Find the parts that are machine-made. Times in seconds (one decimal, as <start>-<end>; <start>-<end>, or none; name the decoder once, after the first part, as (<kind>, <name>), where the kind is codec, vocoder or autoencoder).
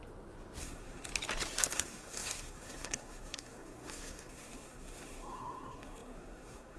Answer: 0.6-1.1 (codec, SNAC); 1.7-6.8